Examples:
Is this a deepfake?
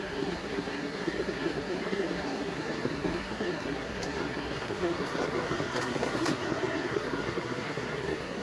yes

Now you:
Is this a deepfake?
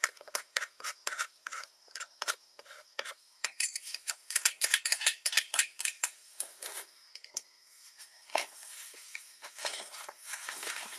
yes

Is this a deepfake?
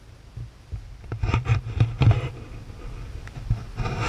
no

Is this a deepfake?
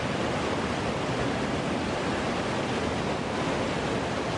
no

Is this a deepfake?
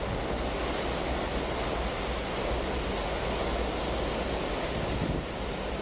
no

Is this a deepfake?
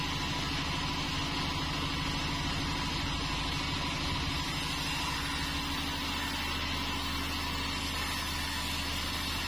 no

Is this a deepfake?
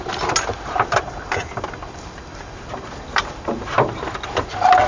no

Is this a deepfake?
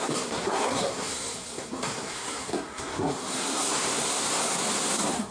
yes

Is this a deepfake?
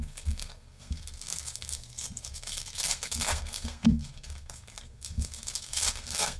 yes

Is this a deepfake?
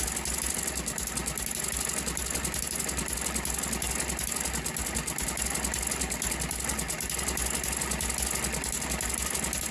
no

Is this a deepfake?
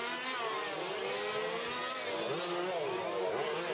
no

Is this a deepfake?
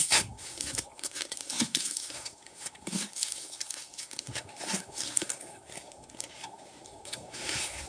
yes